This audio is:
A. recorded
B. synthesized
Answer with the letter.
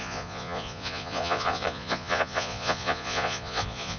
B